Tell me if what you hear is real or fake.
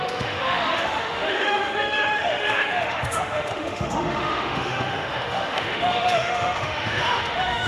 fake